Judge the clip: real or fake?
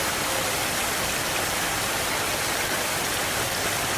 real